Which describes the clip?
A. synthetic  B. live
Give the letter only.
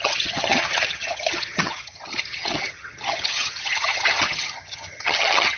A